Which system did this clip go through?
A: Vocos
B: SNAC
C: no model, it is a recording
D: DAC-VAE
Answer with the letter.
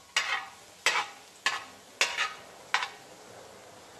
C